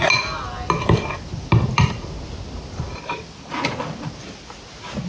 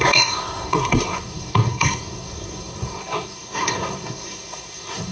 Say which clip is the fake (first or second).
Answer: second